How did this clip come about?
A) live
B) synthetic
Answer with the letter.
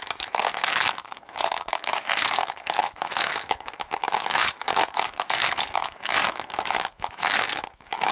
B